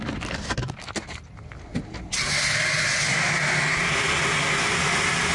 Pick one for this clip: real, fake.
real